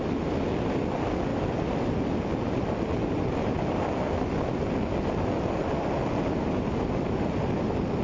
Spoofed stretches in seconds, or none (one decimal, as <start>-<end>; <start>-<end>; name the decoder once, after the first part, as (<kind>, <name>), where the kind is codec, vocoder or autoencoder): none